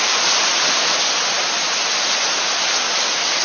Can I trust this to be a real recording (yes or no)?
yes